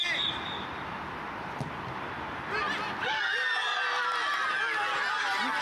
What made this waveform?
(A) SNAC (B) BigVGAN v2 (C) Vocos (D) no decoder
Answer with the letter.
D